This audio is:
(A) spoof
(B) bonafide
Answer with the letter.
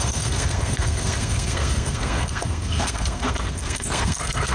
A